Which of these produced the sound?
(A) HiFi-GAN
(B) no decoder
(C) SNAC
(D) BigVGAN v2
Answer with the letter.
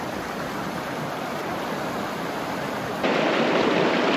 B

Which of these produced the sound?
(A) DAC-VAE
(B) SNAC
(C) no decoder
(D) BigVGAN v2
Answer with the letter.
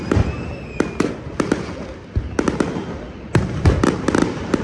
C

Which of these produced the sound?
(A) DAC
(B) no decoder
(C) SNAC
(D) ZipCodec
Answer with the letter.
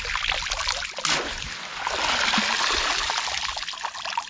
B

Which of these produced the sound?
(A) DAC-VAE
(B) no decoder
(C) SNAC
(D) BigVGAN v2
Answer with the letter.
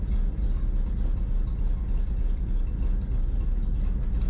B